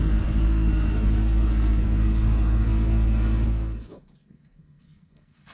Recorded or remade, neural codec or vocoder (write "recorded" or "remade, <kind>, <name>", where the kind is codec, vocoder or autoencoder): remade, codec, SNAC